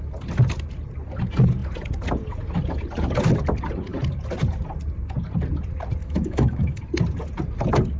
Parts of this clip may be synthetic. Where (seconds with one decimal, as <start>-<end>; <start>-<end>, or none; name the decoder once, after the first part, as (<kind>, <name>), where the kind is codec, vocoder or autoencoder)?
6.0-6.8 (autoencoder, DAC-VAE)